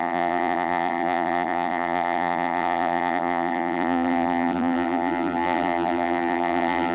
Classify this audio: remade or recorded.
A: remade